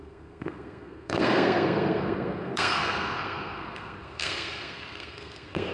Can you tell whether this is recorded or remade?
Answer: remade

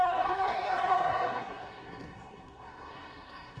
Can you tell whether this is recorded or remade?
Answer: remade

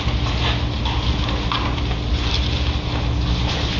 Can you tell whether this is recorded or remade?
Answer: recorded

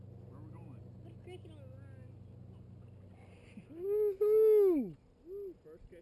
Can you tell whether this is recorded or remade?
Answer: recorded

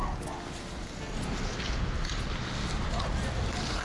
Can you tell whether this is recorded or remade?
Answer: recorded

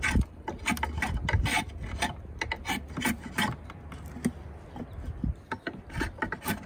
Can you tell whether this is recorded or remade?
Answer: recorded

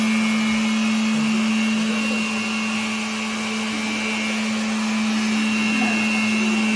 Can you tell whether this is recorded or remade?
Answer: recorded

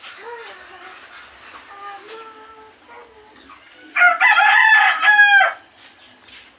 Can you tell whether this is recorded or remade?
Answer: recorded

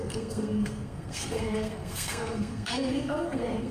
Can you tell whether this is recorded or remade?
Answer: remade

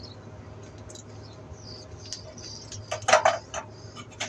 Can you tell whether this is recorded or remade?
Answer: recorded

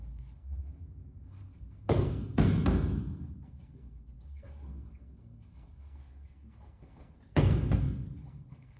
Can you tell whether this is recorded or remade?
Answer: remade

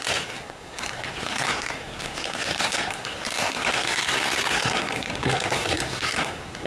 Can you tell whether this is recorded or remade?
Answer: remade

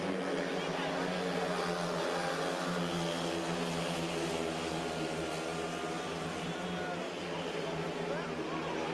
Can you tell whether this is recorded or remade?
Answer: recorded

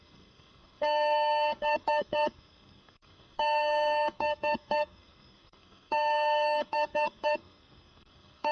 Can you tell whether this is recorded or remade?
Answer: remade